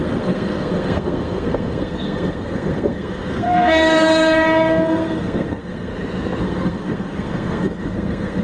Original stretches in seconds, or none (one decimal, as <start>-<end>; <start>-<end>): 5.9-6.4

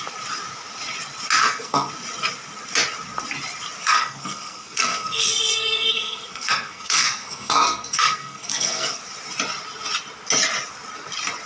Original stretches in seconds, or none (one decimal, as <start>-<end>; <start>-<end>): 0.0-1.4; 1.9-3.8; 9.0-11.5

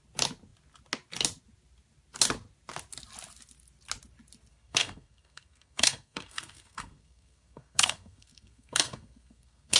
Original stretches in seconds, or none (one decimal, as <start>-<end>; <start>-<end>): 0.0-4.5

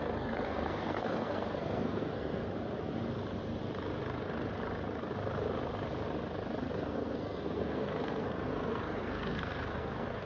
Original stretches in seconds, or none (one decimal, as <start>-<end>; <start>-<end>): 2.4-6.6

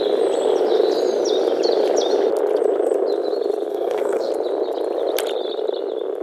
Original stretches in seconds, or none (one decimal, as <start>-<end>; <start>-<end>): 0.0-3.7; 4.3-6.2

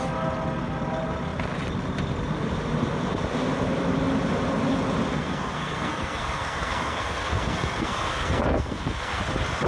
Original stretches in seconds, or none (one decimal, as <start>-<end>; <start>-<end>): 0.0-5.1; 9.2-9.7

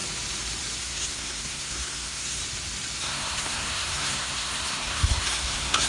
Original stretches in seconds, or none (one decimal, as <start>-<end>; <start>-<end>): 0.0-0.8; 2.4-3.0